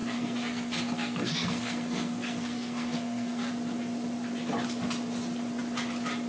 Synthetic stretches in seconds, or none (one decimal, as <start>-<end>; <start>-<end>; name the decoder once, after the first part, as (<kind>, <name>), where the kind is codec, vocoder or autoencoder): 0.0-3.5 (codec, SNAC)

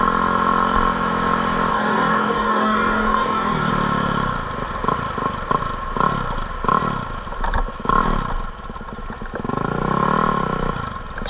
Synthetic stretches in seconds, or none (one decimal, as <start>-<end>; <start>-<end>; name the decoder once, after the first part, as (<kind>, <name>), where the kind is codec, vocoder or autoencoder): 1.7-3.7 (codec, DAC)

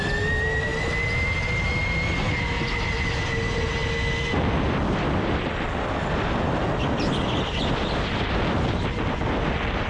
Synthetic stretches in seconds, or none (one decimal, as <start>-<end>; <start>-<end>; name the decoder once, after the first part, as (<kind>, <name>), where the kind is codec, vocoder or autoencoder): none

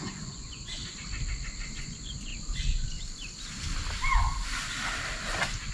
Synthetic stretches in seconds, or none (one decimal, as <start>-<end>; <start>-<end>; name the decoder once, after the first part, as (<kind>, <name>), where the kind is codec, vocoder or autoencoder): 0.0-0.8 (vocoder, Vocos); 1.8-2.3

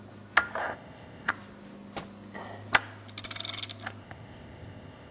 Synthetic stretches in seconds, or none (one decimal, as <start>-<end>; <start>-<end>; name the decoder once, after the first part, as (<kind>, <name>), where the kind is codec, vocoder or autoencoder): 0.6-1.3 (codec, ZipCodec); 4.0-5.1

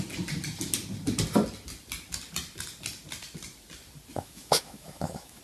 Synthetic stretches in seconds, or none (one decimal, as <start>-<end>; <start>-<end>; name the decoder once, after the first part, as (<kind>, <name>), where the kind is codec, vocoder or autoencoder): 4.1-5.4 (autoencoder, DAC-VAE)